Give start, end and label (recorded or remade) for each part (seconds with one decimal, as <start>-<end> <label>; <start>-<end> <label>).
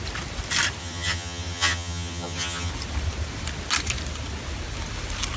0.0-0.8 recorded; 0.8-2.7 remade; 2.7-5.4 recorded